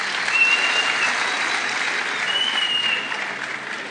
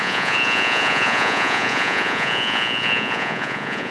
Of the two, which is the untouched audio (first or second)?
first